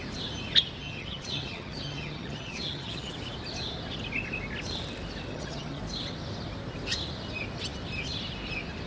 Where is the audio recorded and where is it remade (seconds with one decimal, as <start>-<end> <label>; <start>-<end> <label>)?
0.0-0.8 recorded; 0.8-3.1 remade; 3.1-5.3 recorded; 5.3-5.8 remade; 5.8-8.9 recorded